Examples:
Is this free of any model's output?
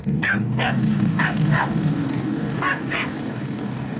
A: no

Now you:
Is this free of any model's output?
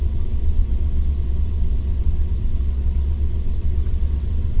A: no